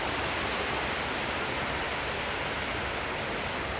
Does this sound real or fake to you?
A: real